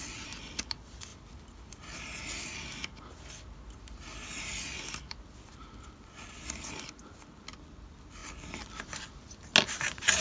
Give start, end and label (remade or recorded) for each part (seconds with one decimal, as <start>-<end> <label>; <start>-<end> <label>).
0.0-10.2 recorded